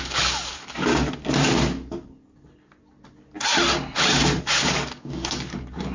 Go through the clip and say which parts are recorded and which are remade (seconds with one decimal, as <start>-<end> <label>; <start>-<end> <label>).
0.0-0.9 remade; 0.9-4.4 recorded; 4.4-5.9 remade